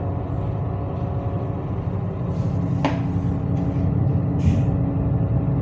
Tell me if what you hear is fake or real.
real